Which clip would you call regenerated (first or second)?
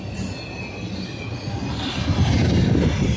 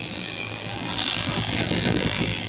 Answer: second